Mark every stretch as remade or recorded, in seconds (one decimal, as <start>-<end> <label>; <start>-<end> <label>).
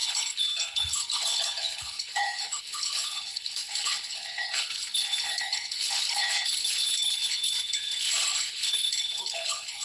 0.0-9.8 remade